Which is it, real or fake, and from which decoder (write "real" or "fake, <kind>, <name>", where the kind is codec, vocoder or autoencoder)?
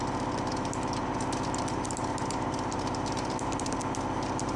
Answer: fake, vocoder, BigVGAN v2